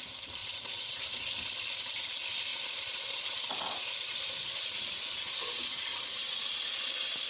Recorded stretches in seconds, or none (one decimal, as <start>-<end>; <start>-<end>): 0.0-0.4; 1.3-2.5; 6.8-7.3